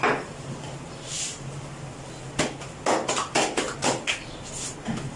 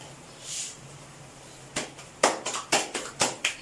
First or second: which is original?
first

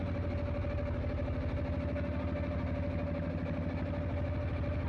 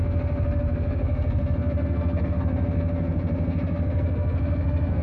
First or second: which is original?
first